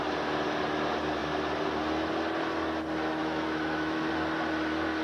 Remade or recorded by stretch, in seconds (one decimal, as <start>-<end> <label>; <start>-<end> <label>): 0.0-3.2 recorded; 3.2-4.1 remade; 4.1-5.0 recorded